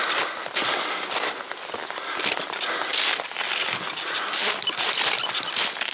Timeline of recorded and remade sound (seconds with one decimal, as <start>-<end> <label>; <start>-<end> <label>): 0.0-5.9 recorded